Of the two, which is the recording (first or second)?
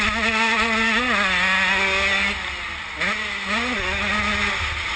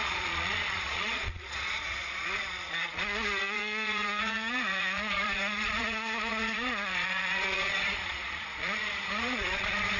first